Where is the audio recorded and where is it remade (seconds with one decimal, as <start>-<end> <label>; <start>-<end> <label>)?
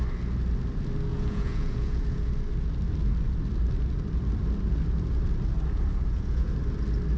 0.0-1.1 recorded; 1.1-2.3 remade; 2.3-5.9 recorded; 5.9-6.5 remade; 6.5-7.2 recorded